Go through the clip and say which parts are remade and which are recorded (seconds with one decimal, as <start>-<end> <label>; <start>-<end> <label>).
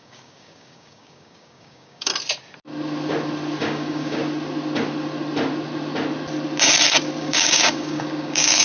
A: 0.0-2.1 remade; 2.1-3.6 recorded; 3.6-4.2 remade; 4.2-7.2 recorded; 7.2-8.6 remade